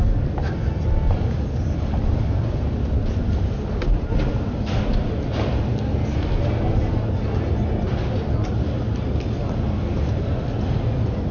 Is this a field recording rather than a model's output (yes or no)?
yes